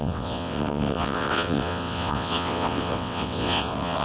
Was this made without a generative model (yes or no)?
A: no